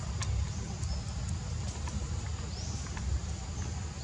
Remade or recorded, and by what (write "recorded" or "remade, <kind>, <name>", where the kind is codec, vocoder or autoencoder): recorded